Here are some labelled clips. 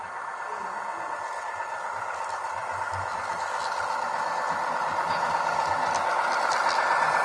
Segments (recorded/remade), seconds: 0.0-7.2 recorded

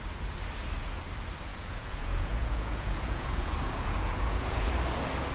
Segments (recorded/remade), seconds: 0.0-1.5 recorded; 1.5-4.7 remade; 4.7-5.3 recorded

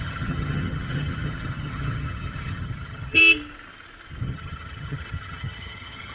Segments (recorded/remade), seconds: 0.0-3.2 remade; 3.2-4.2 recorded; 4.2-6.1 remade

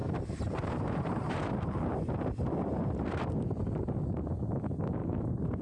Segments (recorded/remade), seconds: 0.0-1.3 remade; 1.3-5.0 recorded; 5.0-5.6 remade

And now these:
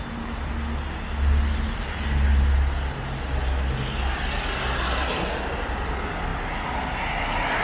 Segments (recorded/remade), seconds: 0.0-7.6 recorded

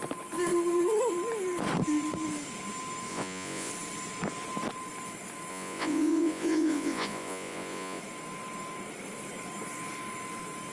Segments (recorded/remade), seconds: 0.0-3.1 recorded; 3.1-3.7 remade; 3.7-5.5 recorded; 5.5-8.0 remade; 8.0-10.7 recorded

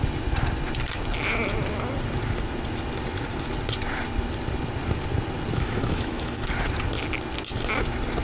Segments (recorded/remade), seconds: 0.0-5.5 recorded; 5.5-6.5 remade; 6.5-8.2 recorded